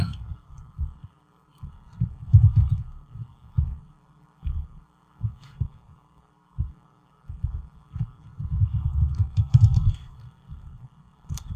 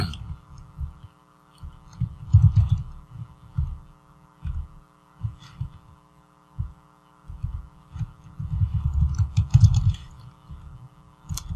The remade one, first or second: first